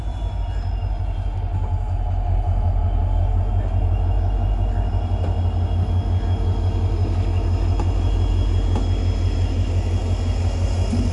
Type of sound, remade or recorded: recorded